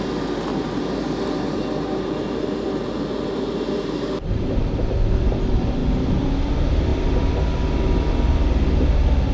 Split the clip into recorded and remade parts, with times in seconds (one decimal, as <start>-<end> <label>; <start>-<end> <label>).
0.0-0.5 recorded; 0.5-4.6 remade; 4.6-9.3 recorded